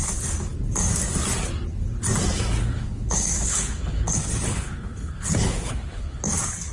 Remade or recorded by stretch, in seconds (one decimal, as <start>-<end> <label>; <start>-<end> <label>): 0.0-2.6 recorded; 2.6-6.2 remade; 6.2-6.7 recorded